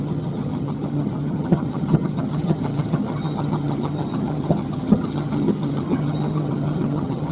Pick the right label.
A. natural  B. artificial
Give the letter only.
B